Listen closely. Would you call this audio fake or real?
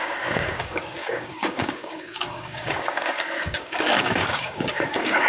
fake